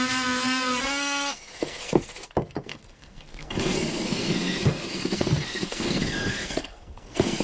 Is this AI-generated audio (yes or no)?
yes